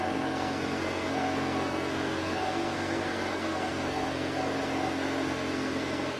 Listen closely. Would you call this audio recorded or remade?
remade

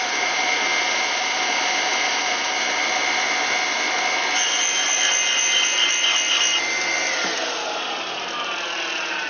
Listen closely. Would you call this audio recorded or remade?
recorded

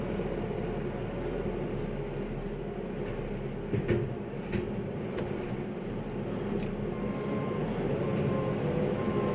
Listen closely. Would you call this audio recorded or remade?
recorded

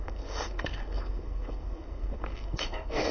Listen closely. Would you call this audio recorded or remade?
remade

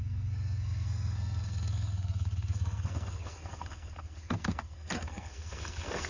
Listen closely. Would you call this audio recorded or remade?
remade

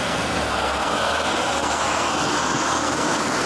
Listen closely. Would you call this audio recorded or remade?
remade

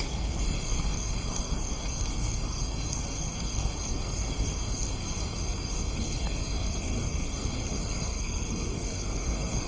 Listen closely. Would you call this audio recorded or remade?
remade